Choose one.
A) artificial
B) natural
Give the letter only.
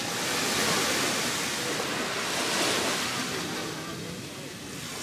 B